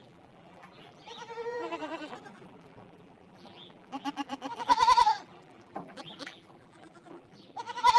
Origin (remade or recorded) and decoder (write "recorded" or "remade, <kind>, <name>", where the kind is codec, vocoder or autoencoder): remade, vocoder, BigVGAN v2